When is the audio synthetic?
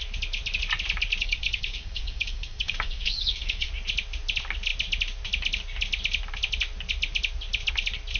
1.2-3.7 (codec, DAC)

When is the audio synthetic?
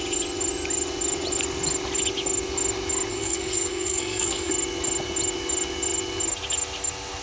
3.1-4.5 (codec, SNAC)